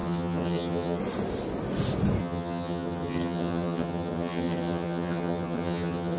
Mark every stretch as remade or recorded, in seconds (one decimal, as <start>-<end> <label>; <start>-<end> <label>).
0.0-1.0 remade; 1.0-2.2 recorded; 2.2-6.2 remade